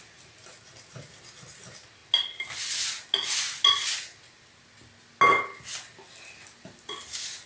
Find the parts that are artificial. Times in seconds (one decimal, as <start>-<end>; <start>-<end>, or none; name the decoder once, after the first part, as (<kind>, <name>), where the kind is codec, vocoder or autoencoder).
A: none